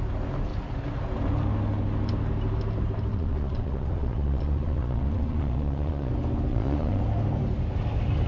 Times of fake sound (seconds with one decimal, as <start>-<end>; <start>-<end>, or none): 3.1-6.1; 6.5-7.0

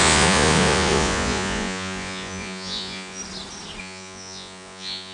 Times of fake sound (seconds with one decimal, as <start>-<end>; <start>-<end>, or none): 0.0-3.2; 3.8-5.1

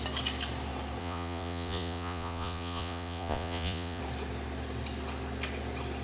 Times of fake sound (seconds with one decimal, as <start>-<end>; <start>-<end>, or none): 1.0-4.0

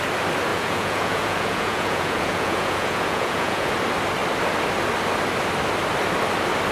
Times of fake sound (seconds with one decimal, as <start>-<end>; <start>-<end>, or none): 0.5-3.7

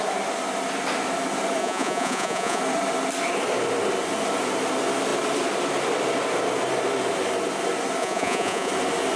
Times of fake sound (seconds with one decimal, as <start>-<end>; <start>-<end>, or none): 1.6-2.6; 8.0-8.7

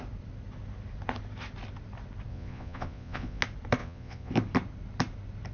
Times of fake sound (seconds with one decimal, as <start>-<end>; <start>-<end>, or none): 2.3-3.4; 3.8-4.3

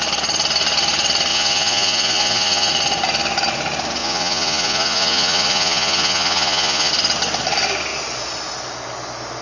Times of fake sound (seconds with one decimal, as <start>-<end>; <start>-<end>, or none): 1.3-2.7; 4.0-6.9